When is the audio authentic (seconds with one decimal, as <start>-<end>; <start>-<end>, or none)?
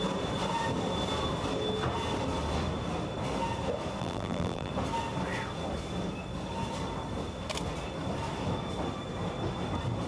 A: 0.0-4.0; 4.7-10.1